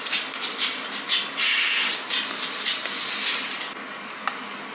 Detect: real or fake real